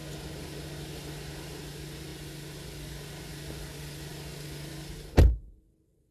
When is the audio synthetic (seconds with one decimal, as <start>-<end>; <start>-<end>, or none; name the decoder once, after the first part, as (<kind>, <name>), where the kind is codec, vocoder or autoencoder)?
none